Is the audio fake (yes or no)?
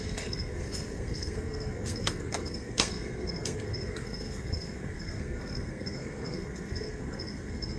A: yes